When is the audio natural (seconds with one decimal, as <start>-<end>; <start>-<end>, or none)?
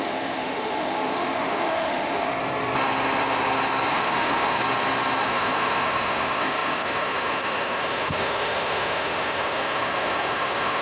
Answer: 2.3-3.9; 4.6-5.2